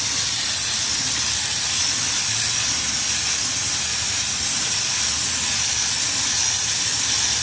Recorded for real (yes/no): yes